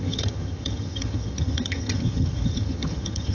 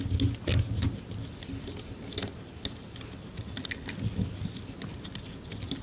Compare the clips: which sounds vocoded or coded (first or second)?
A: first